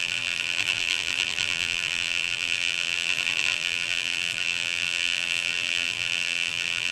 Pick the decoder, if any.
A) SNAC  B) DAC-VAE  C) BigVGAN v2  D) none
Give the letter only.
C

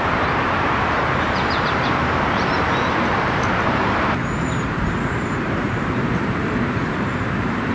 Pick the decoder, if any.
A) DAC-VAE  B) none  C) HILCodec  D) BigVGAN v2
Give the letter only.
D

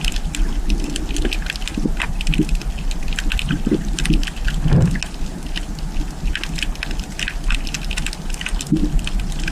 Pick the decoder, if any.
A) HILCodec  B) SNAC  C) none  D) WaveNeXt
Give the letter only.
C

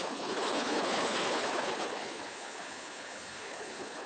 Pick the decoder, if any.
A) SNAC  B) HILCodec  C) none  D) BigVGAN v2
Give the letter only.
B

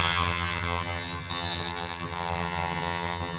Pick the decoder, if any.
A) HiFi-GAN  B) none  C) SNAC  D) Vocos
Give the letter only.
A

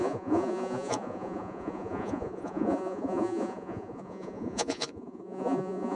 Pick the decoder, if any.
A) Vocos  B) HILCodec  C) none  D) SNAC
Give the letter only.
A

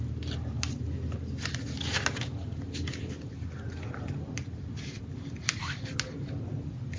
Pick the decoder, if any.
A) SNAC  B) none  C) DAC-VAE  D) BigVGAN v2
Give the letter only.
B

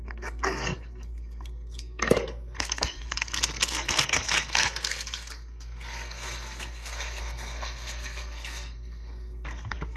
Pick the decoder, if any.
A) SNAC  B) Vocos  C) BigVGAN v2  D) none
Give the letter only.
A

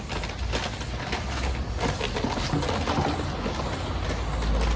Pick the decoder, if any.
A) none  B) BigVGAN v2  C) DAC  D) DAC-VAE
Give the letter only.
A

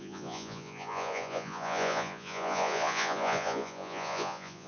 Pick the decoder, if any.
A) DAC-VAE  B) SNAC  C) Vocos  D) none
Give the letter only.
C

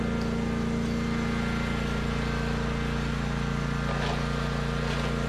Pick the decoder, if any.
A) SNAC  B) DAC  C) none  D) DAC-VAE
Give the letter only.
C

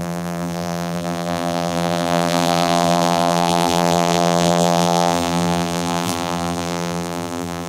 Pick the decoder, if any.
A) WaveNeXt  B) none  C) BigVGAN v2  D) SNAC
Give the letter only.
C